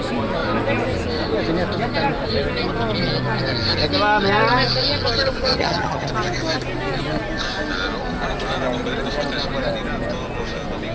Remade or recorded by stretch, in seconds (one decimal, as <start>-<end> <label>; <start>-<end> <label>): 0.0-5.5 recorded; 5.5-6.1 remade; 6.1-10.9 recorded